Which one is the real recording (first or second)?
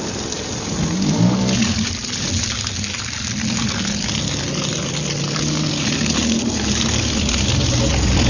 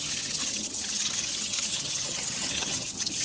first